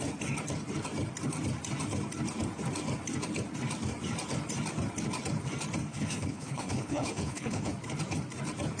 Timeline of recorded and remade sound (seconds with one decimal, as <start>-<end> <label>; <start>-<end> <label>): 0.0-5.9 recorded; 5.9-7.7 remade; 7.7-8.8 recorded